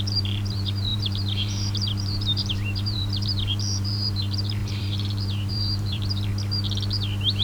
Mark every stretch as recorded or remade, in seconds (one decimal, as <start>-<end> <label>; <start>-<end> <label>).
0.0-6.3 remade; 6.3-7.4 recorded

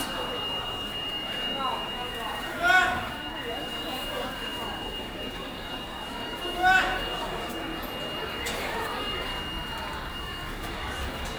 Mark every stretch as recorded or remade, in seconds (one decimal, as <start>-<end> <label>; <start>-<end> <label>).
0.0-7.7 remade; 7.7-8.2 recorded; 8.2-9.3 remade; 9.3-10.1 recorded; 10.1-11.4 remade

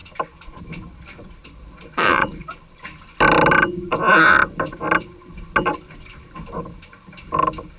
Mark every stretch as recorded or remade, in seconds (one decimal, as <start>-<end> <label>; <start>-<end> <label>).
0.0-1.4 recorded; 1.4-2.5 remade; 2.5-7.8 recorded

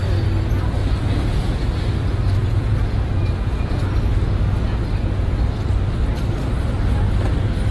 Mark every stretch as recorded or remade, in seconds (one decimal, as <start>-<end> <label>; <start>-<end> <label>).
0.0-0.8 recorded; 0.8-1.7 remade; 1.7-2.4 recorded; 2.4-3.8 remade; 3.8-7.7 recorded

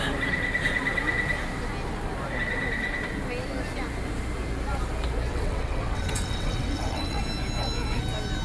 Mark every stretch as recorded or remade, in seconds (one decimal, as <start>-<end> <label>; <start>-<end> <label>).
0.0-5.3 recorded; 5.3-7.2 remade; 7.2-8.4 recorded